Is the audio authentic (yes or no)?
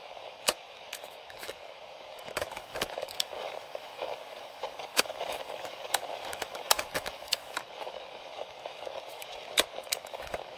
no